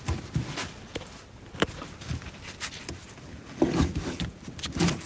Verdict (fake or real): real